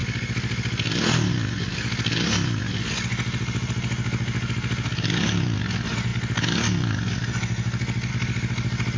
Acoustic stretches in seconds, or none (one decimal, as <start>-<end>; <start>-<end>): 0.0-9.0